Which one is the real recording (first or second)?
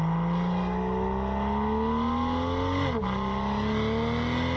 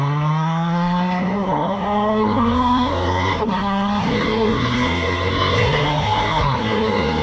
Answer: first